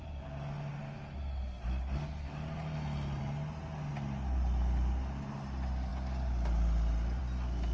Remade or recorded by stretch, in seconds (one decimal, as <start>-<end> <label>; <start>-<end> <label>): 0.0-7.7 recorded

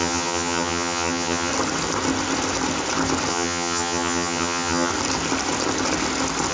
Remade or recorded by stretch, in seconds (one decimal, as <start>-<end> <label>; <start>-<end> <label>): 0.0-1.5 remade; 1.5-3.3 recorded; 3.3-4.9 remade; 4.9-6.5 recorded

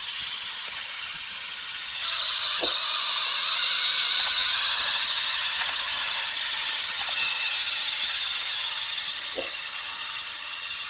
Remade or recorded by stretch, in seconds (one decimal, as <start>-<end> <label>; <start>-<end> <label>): 0.0-2.8 remade; 2.8-4.2 recorded; 4.2-10.9 remade

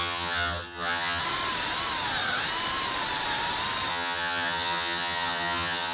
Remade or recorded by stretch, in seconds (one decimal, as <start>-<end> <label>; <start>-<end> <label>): 0.0-1.2 remade; 1.2-3.9 recorded; 3.9-5.9 remade

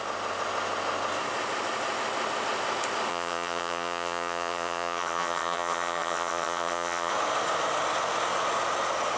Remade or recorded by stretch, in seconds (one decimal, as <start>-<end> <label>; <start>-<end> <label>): 0.0-3.1 recorded; 3.1-7.1 remade; 7.1-9.2 recorded

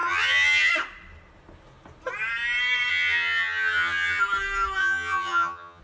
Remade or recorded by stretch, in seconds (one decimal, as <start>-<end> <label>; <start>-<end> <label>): 0.0-0.7 remade; 0.7-2.9 recorded; 2.9-4.2 remade; 4.2-4.8 recorded; 4.8-5.8 remade

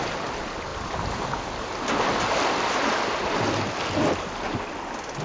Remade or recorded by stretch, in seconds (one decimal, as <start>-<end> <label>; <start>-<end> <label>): 0.0-5.2 recorded

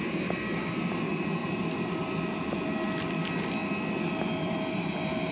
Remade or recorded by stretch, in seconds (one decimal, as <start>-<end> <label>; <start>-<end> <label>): 0.0-5.3 recorded